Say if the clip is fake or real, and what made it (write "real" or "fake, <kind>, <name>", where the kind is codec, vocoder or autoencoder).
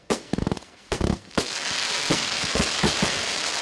fake, codec, SNAC